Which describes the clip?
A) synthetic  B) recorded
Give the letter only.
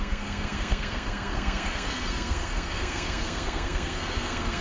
A